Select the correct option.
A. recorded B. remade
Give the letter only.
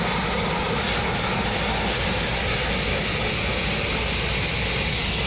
A